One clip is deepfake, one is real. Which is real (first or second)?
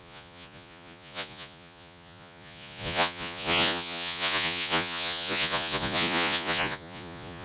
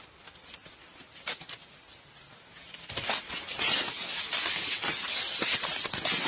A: second